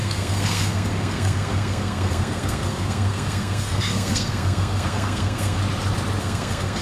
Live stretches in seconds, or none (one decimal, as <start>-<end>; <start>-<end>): 5.6-6.2